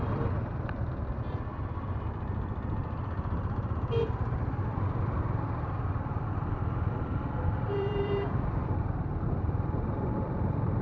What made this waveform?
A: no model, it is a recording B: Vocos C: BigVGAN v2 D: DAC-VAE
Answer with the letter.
C